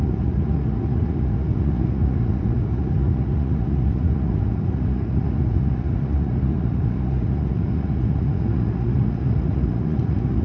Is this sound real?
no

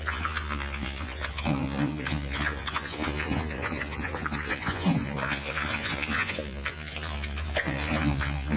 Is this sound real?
no